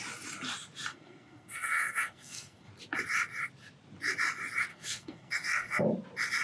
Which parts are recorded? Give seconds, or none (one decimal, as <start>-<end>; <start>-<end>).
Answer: 0.0-0.9; 2.7-4.7; 5.8-6.4

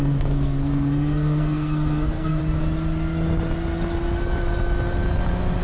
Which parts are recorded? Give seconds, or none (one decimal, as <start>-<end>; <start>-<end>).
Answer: 2.4-5.6

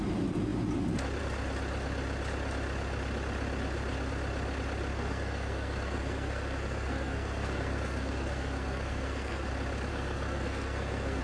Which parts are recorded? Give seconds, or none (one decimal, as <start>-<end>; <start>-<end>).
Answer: 0.0-4.9; 9.5-9.9

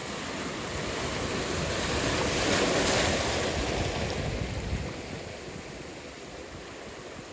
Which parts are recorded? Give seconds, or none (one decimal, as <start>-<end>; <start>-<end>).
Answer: 0.0-7.3

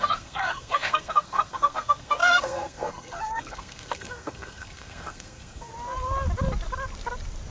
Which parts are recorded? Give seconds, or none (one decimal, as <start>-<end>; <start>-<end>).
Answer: 5.7-7.5

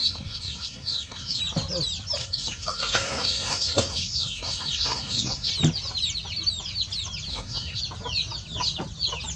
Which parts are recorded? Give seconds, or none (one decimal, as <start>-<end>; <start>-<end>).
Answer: 1.4-2.2; 5.5-7.3; 7.8-9.4